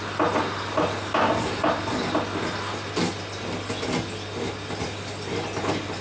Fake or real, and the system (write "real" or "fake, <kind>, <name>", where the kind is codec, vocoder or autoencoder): real